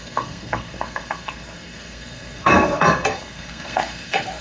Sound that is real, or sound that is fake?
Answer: fake